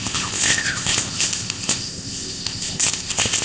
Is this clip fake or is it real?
fake